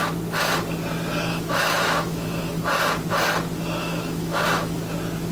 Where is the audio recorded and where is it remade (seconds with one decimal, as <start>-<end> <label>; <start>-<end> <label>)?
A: 0.0-1.3 recorded; 1.3-2.6 remade; 2.6-3.8 recorded; 3.8-4.8 remade; 4.8-5.3 recorded